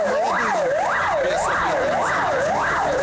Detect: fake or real real